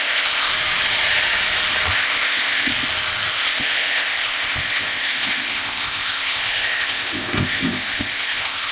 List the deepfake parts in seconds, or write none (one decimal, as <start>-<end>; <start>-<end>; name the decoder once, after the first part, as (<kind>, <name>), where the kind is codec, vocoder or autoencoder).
0.0-0.5 (codec, ZipCodec); 1.9-2.7; 3.3-8.7